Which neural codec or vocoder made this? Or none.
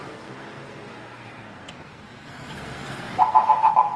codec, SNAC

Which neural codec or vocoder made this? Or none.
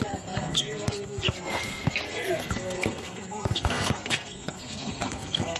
codec, SNAC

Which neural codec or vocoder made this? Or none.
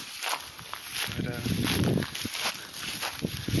none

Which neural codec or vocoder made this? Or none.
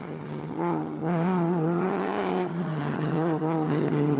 vocoder, HiFi-GAN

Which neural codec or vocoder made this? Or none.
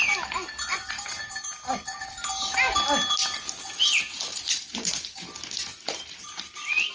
none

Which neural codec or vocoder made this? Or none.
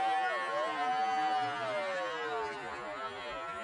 none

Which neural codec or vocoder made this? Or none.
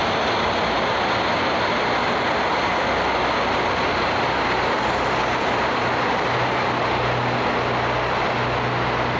none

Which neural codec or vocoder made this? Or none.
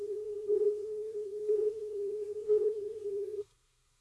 codec, SNAC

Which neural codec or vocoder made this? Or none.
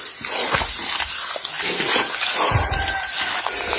none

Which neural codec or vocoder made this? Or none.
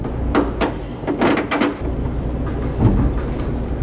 none